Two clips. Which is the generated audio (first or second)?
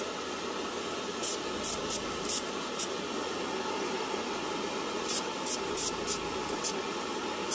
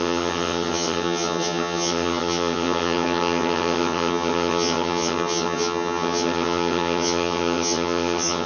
second